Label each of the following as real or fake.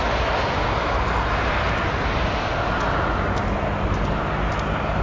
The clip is real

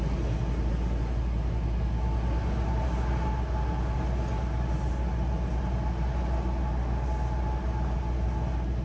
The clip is real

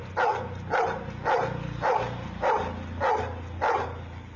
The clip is real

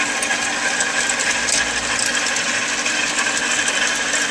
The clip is real